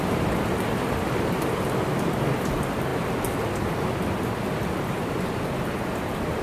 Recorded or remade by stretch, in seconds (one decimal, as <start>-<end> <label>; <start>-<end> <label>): 0.0-6.4 recorded